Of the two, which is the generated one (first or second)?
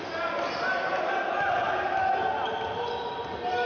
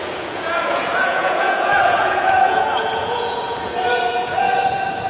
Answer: second